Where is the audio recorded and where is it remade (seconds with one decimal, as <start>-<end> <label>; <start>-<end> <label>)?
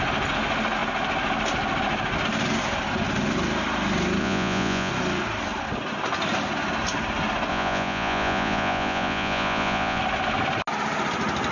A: 0.0-4.2 recorded; 4.2-4.9 remade; 4.9-7.5 recorded; 7.5-10.0 remade; 10.0-11.5 recorded